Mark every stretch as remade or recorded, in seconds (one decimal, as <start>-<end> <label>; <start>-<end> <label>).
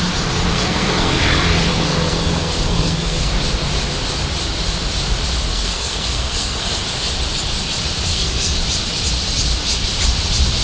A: 0.0-0.5 recorded; 0.5-1.2 remade; 1.2-1.7 recorded; 1.7-3.3 remade; 3.3-5.5 recorded; 5.5-6.8 remade; 6.8-8.1 recorded; 8.1-8.6 remade; 8.6-10.6 recorded